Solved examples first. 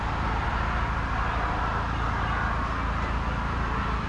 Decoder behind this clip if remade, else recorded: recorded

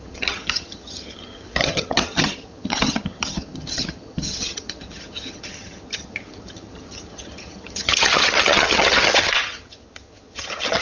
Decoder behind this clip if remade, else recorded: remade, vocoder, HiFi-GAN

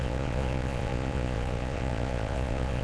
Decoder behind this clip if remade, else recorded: remade, vocoder, Vocos